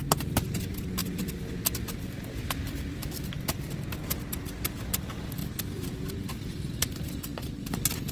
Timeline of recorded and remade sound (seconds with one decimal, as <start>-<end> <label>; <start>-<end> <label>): 0.0-1.0 recorded; 1.0-3.7 remade; 3.7-5.4 recorded; 5.4-6.8 remade; 6.8-8.1 recorded